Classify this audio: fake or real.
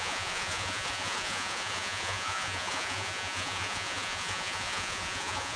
fake